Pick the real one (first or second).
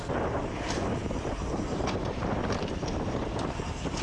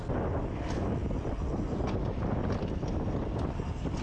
second